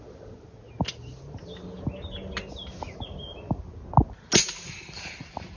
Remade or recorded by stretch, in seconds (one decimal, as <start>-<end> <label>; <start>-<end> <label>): 0.0-5.6 recorded